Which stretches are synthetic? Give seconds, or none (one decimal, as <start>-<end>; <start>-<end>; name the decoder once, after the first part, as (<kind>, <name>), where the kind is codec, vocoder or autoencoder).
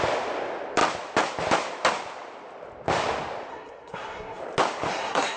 3.5-4.4 (codec, SNAC); 4.9-5.4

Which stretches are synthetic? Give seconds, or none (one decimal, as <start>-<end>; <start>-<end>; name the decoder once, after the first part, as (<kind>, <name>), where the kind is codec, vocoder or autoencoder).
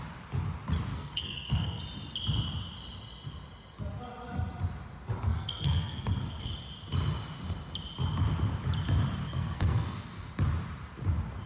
0.9-1.8 (codec, SNAC); 5.3-6.5; 9.2-10.3